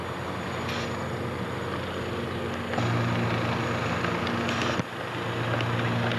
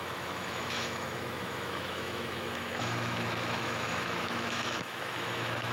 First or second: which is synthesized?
second